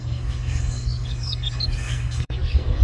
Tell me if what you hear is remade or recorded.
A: remade